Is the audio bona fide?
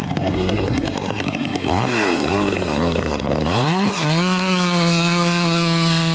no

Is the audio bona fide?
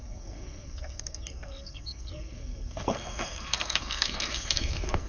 no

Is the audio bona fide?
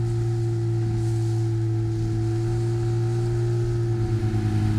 yes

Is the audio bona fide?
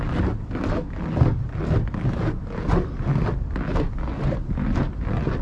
yes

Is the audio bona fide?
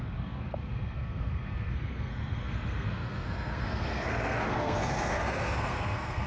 no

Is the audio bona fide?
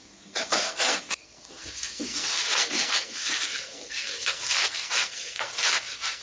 no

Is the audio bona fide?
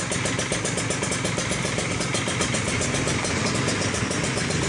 yes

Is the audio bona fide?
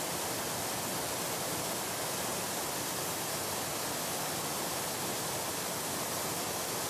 yes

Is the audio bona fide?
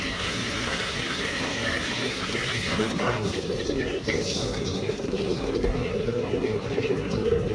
no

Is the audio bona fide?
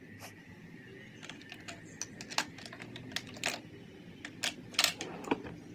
yes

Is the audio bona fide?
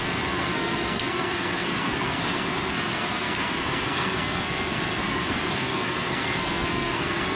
no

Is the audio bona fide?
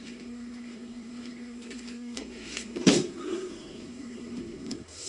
no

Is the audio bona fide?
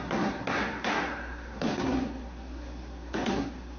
no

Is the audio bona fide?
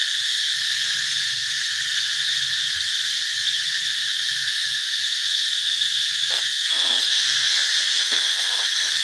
no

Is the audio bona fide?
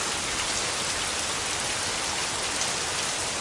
yes